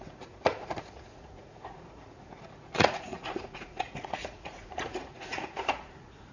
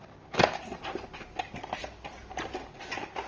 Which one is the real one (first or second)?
second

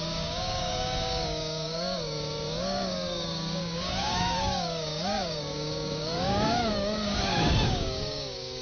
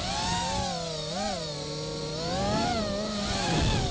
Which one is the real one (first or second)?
second